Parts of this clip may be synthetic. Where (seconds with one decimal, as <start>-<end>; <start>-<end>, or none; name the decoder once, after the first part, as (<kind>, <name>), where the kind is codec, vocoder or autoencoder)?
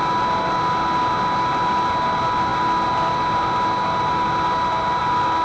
none